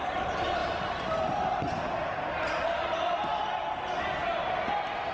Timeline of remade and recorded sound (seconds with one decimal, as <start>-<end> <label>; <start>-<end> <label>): 0.0-5.1 recorded